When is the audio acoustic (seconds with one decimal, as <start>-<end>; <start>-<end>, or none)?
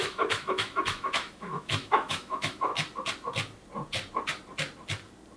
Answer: 2.7-5.4